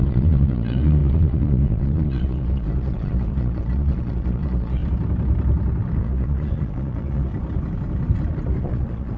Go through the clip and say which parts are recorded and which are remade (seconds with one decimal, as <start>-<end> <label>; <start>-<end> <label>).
0.0-4.8 remade; 4.8-6.0 recorded; 6.0-7.3 remade; 7.3-8.6 recorded; 8.6-9.2 remade

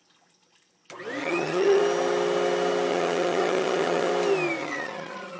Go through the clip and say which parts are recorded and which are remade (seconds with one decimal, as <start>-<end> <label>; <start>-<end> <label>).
0.0-1.2 recorded; 1.2-1.8 remade; 1.8-2.9 recorded; 2.9-4.1 remade; 4.1-4.6 recorded; 4.6-5.4 remade